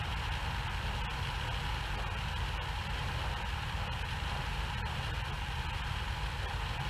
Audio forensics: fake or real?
real